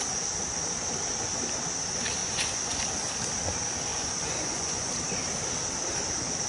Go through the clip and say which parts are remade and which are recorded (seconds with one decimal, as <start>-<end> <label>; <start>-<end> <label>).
0.0-2.2 recorded; 2.2-2.8 remade; 2.8-3.9 recorded; 3.9-4.9 remade; 4.9-6.5 recorded